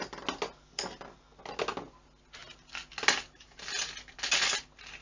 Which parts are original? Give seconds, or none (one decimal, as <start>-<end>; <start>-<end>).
0.0-5.0